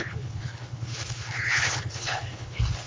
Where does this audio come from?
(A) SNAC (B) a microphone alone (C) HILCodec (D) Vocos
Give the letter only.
C